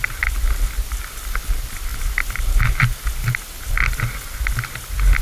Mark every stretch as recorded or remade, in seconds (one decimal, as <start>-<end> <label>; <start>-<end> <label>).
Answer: 0.0-5.2 recorded